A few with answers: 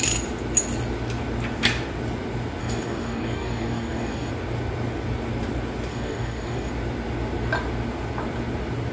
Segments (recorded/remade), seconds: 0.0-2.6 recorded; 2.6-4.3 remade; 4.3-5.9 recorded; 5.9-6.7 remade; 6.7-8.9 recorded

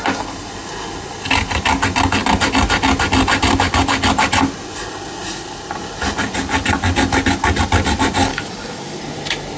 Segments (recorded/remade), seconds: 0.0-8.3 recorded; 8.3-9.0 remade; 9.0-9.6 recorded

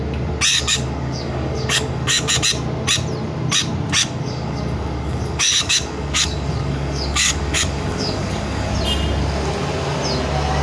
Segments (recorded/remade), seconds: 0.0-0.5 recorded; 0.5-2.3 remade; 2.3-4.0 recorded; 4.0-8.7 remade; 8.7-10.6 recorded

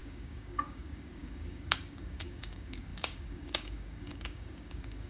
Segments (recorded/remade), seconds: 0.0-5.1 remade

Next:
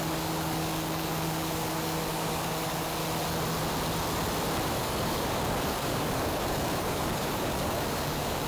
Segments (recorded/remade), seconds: 0.0-3.0 remade; 3.0-4.7 recorded; 4.7-8.5 remade

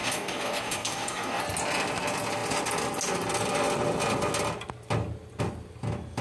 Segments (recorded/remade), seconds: 0.0-1.4 remade; 1.4-6.2 recorded

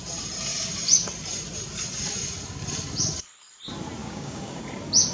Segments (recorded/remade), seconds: 0.0-4.0 recorded; 4.0-4.6 remade; 4.6-5.1 recorded